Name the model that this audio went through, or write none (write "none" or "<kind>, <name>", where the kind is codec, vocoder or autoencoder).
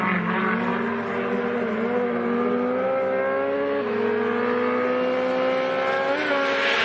none